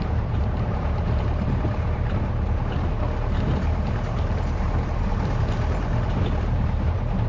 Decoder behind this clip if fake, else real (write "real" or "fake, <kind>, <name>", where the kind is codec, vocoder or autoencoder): fake, vocoder, BigVGAN v2